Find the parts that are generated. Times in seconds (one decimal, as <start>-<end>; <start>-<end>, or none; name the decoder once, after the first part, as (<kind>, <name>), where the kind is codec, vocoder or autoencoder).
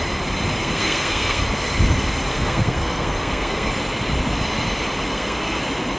0.6-1.4 (codec, SNAC); 2.3-3.7; 5.1-5.6